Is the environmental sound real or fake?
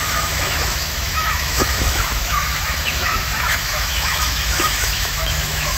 fake